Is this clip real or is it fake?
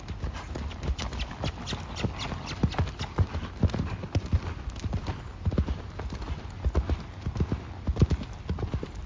real